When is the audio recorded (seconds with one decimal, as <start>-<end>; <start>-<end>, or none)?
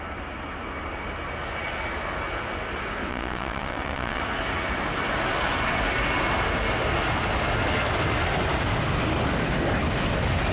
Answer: 0.0-3.1; 4.2-10.5